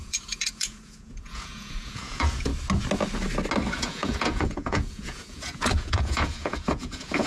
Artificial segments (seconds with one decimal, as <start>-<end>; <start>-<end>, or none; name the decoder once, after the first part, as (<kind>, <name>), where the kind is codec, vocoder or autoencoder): 0.0-2.5 (vocoder, Vocos); 3.7-7.3